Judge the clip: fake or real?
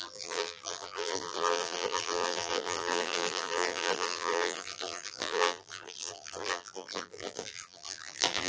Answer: fake